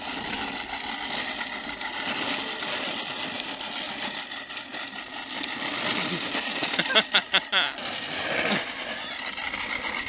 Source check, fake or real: real